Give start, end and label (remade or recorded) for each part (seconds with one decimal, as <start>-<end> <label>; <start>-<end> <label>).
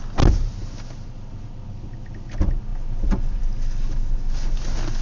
0.0-5.0 recorded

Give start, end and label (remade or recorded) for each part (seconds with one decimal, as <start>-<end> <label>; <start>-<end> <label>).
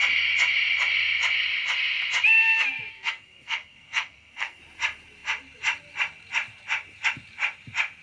0.0-2.9 recorded; 2.9-4.6 remade; 4.6-8.0 recorded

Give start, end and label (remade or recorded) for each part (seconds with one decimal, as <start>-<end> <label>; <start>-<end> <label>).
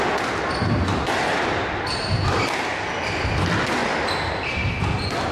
0.0-5.3 recorded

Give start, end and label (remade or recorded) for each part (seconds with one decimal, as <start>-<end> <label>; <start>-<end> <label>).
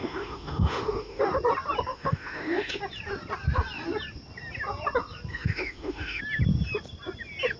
0.0-1.2 remade; 1.2-1.9 recorded; 1.9-2.8 remade; 2.8-5.3 recorded; 5.3-6.2 remade; 6.2-7.6 recorded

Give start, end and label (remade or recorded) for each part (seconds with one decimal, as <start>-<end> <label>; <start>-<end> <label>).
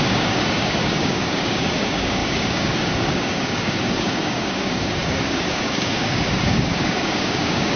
0.0-7.8 remade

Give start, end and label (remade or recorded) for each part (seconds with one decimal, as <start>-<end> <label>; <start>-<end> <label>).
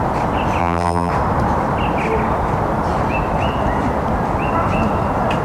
0.0-0.6 recorded; 0.6-1.1 remade; 1.1-5.4 recorded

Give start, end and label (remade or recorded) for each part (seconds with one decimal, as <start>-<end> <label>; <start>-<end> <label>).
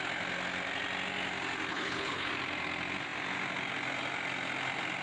0.0-1.7 recorded; 1.7-2.3 remade; 2.3-5.0 recorded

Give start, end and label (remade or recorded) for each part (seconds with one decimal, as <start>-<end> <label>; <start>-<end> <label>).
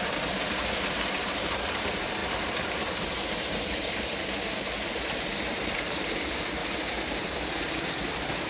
0.0-8.5 remade